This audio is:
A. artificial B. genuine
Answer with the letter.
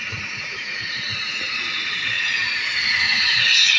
A